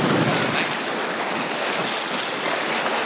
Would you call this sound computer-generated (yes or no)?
no